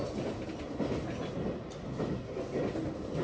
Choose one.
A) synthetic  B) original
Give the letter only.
B